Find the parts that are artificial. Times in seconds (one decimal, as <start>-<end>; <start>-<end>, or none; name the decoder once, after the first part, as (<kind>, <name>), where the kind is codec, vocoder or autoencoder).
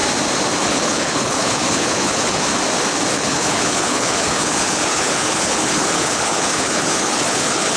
0.6-2.5 (codec, HILCodec); 3.1-7.8